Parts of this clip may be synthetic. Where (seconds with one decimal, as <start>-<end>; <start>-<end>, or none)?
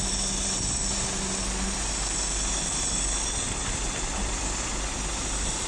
3.6-4.9